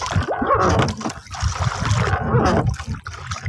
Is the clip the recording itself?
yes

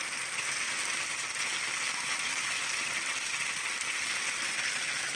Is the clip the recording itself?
no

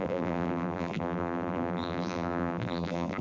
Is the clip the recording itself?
no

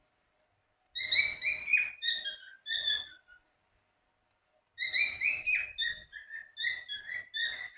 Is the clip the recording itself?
yes